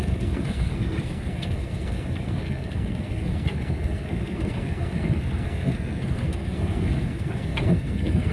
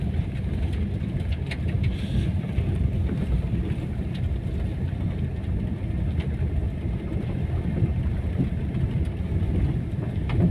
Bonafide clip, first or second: second